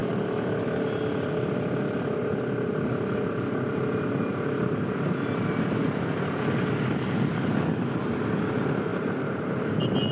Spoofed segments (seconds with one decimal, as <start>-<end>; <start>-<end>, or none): none